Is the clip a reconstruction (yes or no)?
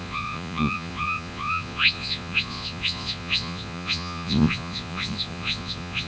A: yes